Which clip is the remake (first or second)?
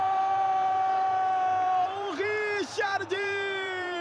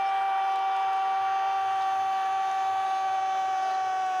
first